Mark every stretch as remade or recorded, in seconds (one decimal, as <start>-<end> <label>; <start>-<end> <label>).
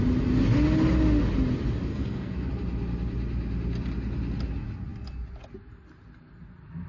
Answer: 0.0-1.9 recorded; 1.9-2.5 remade; 2.5-6.9 recorded